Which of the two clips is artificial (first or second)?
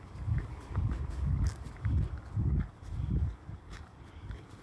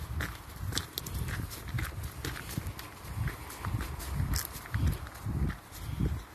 first